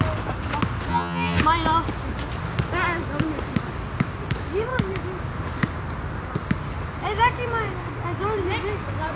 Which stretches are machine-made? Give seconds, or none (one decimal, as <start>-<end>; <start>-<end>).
0.9-1.4